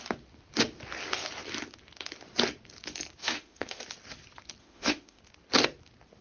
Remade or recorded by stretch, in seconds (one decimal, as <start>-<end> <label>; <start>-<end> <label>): 0.0-3.2 recorded; 3.2-3.8 remade; 3.8-4.6 recorded; 4.6-5.2 remade; 5.2-6.2 recorded